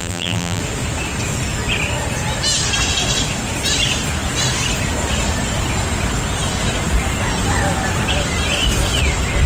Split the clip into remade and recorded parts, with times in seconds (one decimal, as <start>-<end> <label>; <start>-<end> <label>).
0.0-0.6 remade; 0.6-9.5 recorded